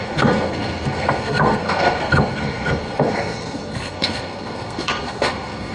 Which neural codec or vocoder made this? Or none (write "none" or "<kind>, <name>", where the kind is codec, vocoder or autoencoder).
codec, SNAC